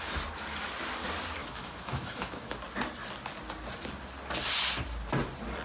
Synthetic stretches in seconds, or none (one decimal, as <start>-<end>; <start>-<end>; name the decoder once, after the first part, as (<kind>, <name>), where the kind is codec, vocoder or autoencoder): 1.4-2.5 (autoencoder, DAC-VAE)

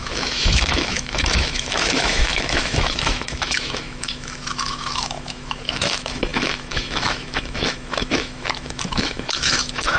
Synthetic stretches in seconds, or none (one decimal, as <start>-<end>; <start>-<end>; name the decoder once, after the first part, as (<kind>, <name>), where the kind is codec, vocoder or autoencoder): 0.0-10.0 (autoencoder, DAC-VAE)

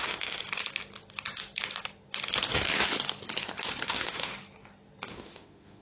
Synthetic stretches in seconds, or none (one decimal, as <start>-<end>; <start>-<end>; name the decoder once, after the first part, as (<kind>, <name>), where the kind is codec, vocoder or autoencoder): 0.0-0.4 (autoencoder, DAC-VAE); 3.9-4.3; 5.1-5.8